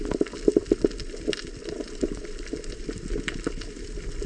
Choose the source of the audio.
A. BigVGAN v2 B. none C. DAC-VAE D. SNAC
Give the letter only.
B